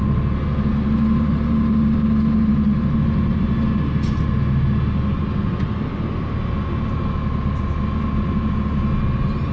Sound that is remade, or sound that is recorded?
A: recorded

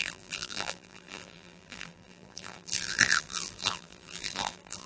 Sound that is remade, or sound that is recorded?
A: remade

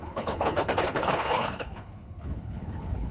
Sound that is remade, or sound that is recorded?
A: remade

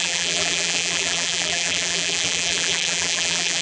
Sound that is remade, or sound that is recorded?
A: remade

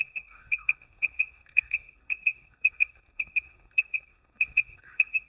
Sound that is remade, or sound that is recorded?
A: remade